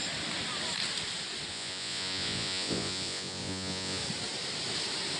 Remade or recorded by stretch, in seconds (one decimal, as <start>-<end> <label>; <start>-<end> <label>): 0.0-1.5 recorded; 1.5-4.0 remade; 4.0-5.2 recorded